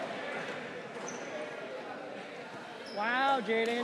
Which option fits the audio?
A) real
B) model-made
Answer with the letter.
A